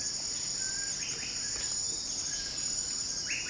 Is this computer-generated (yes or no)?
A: no